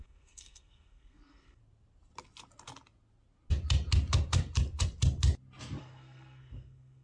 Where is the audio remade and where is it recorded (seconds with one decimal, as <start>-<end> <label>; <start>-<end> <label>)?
0.0-1.6 remade; 1.6-5.8 recorded; 5.8-7.0 remade

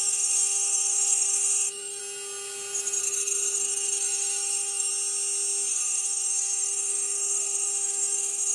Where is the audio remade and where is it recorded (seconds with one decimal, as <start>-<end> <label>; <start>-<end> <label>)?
0.0-2.0 remade; 2.0-3.0 recorded; 3.0-4.9 remade; 4.9-5.7 recorded; 5.7-8.5 remade

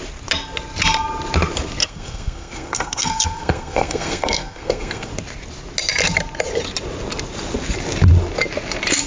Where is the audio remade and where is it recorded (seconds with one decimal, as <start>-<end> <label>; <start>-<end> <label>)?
0.0-1.8 recorded; 1.8-5.1 remade; 5.1-9.1 recorded

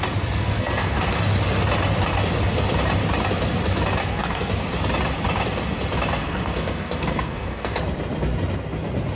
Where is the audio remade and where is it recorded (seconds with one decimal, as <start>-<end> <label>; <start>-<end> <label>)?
0.0-0.4 recorded; 0.4-1.2 remade; 1.2-4.0 recorded; 4.0-4.5 remade; 4.5-6.2 recorded; 6.2-7.8 remade; 7.8-9.2 recorded